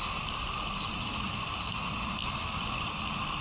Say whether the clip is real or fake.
real